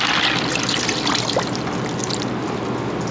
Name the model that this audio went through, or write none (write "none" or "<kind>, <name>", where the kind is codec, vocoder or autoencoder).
none